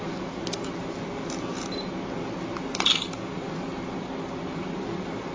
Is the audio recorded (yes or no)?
yes